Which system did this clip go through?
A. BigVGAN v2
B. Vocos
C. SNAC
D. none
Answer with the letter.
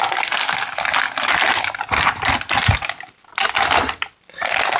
D